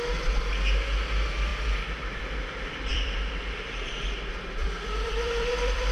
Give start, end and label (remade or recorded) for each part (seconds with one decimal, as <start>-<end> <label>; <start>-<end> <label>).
0.0-2.9 recorded; 2.9-3.8 remade; 3.8-4.6 recorded; 4.6-5.9 remade